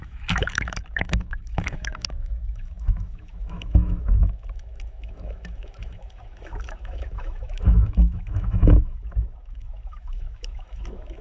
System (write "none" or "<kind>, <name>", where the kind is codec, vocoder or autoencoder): autoencoder, DAC-VAE